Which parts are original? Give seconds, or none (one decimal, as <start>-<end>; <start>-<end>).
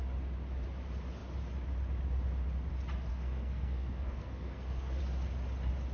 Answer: 0.0-3.1; 5.0-5.9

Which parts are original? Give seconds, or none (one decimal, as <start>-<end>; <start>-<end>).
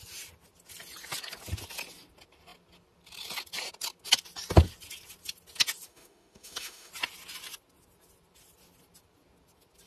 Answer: 0.0-5.9; 6.9-9.9